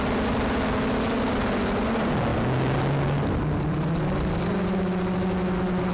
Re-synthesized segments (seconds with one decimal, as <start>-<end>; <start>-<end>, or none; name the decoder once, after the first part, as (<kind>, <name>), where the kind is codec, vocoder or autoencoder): none

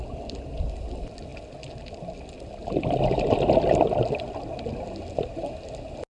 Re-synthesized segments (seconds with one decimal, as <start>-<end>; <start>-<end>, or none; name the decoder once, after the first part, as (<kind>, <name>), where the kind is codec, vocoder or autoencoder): none

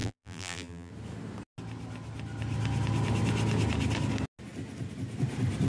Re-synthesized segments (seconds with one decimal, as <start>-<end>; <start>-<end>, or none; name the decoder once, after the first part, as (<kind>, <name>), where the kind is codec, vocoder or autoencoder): 0.0-0.9 (vocoder, BigVGAN v2)

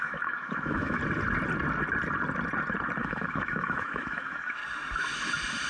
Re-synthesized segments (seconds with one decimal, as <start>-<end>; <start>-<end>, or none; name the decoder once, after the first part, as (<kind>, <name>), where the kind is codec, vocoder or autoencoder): 0.0-1.0 (autoencoder, DAC-VAE); 3.0-4.6

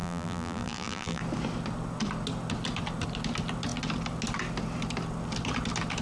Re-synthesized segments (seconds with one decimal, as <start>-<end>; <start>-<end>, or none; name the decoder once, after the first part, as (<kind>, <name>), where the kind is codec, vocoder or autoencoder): 0.0-1.2 (vocoder, BigVGAN v2)

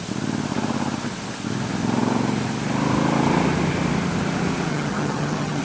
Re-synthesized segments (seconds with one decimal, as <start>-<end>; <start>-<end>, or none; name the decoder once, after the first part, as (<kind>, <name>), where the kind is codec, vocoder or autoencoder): 4.7-5.6 (vocoder, HiFi-GAN)

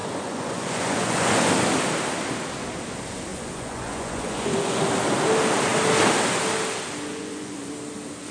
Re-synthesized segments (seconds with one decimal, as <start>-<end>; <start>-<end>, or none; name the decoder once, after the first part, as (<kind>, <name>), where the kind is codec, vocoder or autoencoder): 0.0-1.5 (vocoder, Vocos); 3.3-4.8; 7.1-7.7

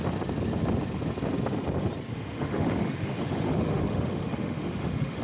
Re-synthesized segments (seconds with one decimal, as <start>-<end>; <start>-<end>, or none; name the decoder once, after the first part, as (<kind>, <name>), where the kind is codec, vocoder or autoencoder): 2.1-5.2 (autoencoder, DAC-VAE)